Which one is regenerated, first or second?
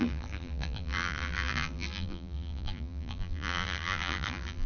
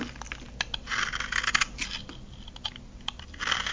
first